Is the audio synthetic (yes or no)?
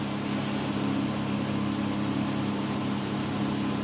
no